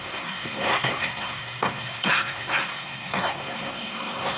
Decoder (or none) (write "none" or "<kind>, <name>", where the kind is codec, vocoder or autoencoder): codec, SNAC